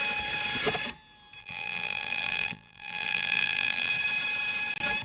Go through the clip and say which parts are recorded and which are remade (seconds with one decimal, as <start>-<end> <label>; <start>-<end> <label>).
0.0-1.4 recorded; 1.4-3.9 remade; 3.9-5.0 recorded